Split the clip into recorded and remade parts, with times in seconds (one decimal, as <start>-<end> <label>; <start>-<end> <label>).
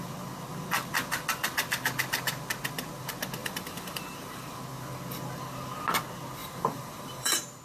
0.0-3.4 recorded; 3.4-4.6 remade; 4.6-6.4 recorded; 6.4-7.6 remade